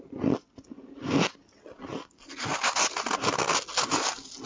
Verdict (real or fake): real